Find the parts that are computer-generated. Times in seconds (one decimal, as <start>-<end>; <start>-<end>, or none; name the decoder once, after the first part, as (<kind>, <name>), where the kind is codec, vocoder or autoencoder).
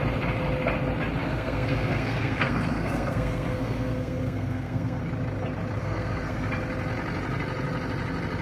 1.2-5.0 (codec, SNAC); 5.8-6.5